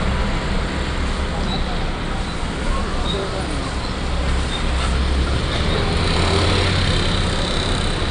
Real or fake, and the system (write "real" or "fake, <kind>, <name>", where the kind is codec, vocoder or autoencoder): real